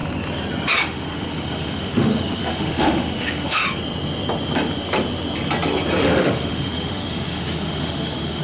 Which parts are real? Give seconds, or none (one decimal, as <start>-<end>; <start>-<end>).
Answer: 0.0-0.8; 3.6-6.0